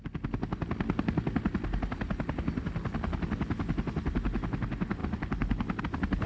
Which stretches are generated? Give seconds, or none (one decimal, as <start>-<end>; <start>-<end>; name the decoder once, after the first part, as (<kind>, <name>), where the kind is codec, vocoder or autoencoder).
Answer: none